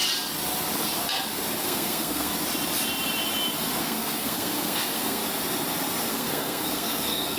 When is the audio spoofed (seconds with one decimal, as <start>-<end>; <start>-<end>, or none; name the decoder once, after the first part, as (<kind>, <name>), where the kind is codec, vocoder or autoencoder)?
1.6-2.3 (codec, SNAC); 3.8-5.2; 6.1-7.4